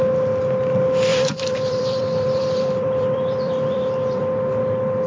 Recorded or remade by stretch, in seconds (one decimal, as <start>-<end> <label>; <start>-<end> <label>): 0.0-1.1 recorded; 1.1-4.2 remade; 4.2-5.1 recorded